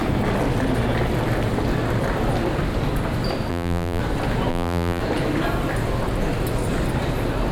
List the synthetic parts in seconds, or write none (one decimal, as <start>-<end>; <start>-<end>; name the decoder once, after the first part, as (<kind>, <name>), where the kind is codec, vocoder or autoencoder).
3.5-4.0 (vocoder, BigVGAN v2); 4.5-5.0